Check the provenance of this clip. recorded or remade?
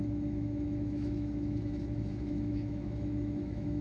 remade